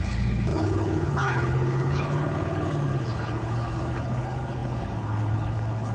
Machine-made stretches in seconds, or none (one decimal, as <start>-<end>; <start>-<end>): 0.0-5.9